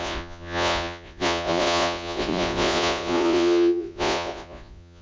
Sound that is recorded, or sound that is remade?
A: remade